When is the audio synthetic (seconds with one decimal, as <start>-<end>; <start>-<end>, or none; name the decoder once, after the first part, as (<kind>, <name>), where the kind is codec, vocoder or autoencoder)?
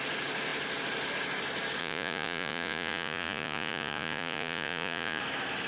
1.8-5.2 (vocoder, Vocos)